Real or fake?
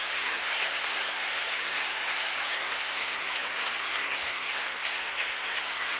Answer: fake